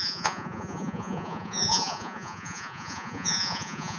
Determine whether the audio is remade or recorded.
remade